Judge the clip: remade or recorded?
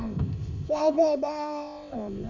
remade